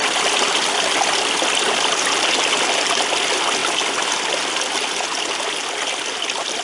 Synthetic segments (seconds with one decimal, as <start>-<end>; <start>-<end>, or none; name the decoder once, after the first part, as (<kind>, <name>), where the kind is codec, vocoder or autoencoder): none